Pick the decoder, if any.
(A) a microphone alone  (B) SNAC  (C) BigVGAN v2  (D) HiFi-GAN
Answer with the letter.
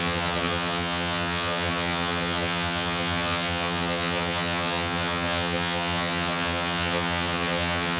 D